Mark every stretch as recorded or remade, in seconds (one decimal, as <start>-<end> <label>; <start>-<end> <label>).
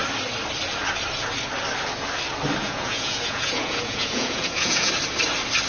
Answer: 0.0-2.6 recorded; 2.6-4.9 remade; 4.9-5.7 recorded